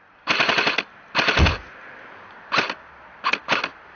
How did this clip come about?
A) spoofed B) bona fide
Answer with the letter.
B